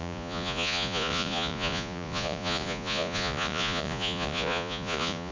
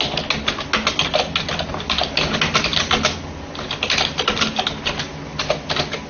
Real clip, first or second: second